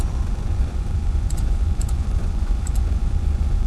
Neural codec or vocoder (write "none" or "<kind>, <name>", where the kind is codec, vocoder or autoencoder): vocoder, Vocos